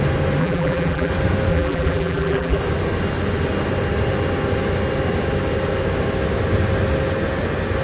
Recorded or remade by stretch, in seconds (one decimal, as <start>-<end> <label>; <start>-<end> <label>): 0.0-0.4 recorded; 0.4-1.1 remade; 1.1-1.5 recorded; 1.5-2.6 remade; 2.6-7.8 recorded

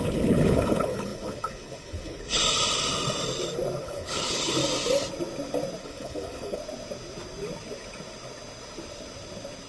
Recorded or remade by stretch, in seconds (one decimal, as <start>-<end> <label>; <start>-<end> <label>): 0.0-2.4 remade; 2.4-3.8 recorded; 3.8-4.6 remade; 4.6-5.8 recorded; 5.8-6.6 remade; 6.6-9.7 recorded

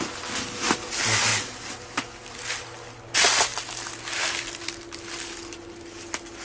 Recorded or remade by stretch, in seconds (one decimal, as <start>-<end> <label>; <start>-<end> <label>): 0.0-6.4 recorded

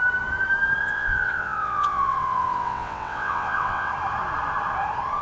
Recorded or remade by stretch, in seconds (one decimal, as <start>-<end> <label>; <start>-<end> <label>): 0.0-0.8 recorded; 0.8-3.9 remade; 3.9-5.2 recorded

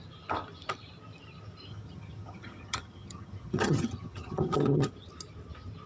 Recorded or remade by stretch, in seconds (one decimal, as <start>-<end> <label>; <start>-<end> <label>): 0.0-1.7 recorded; 1.7-4.9 remade; 4.9-5.9 recorded

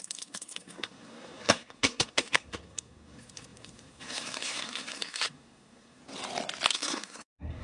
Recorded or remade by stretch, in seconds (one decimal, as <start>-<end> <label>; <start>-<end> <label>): 0.0-6.0 remade; 6.0-6.7 recorded; 6.7-7.6 remade

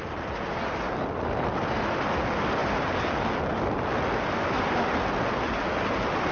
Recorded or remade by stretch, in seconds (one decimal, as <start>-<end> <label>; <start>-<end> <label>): 0.0-6.3 recorded